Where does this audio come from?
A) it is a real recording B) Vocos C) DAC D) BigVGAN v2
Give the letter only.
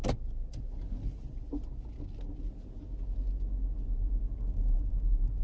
A